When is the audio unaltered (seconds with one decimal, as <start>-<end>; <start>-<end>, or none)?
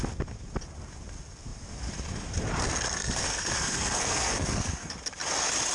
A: 0.0-3.2; 4.9-5.7